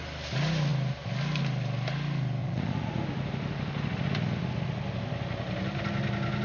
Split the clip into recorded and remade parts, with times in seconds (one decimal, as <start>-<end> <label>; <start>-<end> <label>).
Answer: 0.0-2.4 recorded; 2.4-3.0 remade; 3.0-6.4 recorded